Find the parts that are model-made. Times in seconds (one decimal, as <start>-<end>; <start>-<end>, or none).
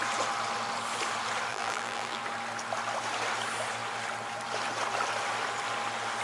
1.5-2.2